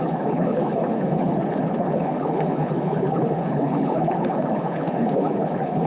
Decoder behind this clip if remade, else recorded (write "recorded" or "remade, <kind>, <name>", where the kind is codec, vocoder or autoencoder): remade, codec, HILCodec